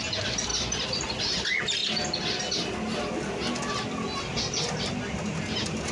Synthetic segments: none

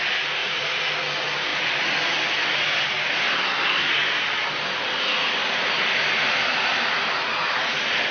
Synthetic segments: none

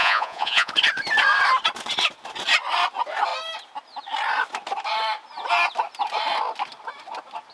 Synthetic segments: 0.0-0.7

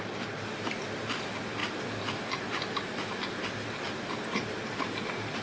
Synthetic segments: none

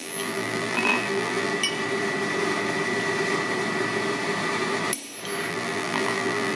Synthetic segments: 0.0-1.5; 5.5-6.6

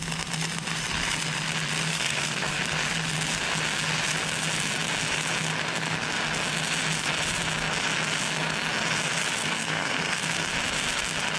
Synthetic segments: 1.9-2.6; 9.4-10.2

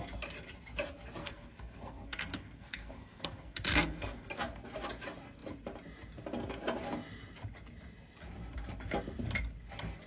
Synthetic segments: 1.2-4.3